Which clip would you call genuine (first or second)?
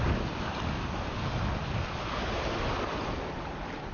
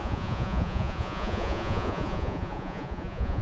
first